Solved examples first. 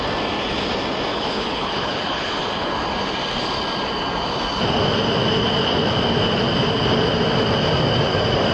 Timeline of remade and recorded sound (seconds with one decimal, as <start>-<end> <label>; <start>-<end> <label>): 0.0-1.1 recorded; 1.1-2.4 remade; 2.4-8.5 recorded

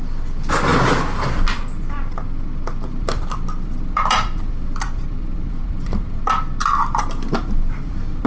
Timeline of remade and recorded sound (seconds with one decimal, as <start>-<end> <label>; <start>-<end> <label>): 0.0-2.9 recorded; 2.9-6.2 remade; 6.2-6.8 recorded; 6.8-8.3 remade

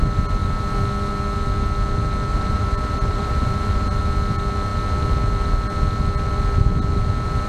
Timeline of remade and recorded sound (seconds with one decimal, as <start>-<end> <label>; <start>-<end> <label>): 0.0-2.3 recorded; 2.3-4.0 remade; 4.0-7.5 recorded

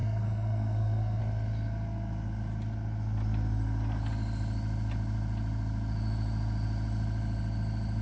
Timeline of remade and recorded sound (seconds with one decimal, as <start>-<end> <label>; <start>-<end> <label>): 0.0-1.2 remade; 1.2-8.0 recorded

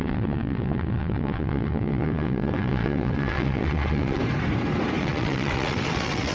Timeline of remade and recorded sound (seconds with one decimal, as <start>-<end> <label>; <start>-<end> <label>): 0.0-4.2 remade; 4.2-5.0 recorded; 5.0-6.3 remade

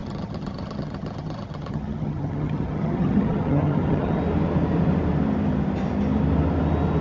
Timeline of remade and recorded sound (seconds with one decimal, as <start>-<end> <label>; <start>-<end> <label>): 0.0-4.2 remade; 4.2-7.0 recorded

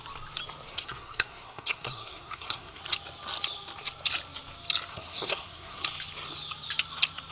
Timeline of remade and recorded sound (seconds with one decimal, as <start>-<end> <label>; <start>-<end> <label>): 0.0-0.7 recorded; 0.7-2.8 remade; 2.8-4.9 recorded; 4.9-5.8 remade; 5.8-7.3 recorded

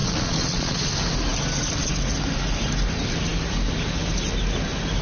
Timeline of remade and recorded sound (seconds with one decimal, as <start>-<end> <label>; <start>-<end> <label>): 0.0-0.9 remade; 0.9-5.0 recorded